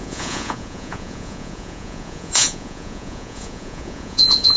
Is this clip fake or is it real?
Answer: fake